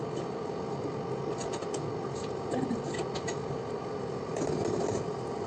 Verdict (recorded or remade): recorded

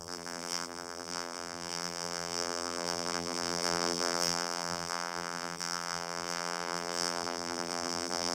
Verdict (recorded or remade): remade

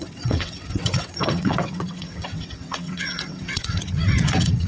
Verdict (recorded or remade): remade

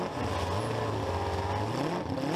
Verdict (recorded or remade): recorded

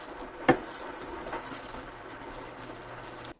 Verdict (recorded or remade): recorded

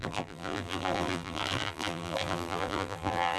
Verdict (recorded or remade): remade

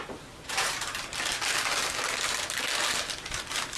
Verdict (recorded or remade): recorded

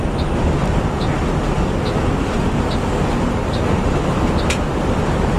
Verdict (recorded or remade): recorded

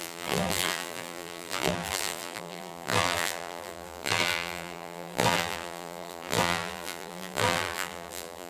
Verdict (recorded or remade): remade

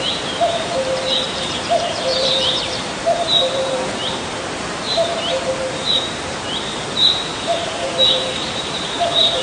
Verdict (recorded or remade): remade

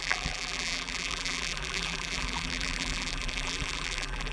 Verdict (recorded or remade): remade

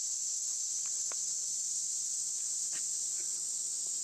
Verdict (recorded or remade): recorded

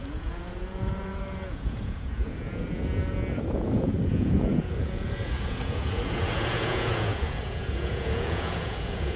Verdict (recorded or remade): remade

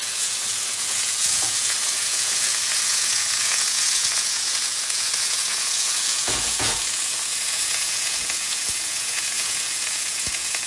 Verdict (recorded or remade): remade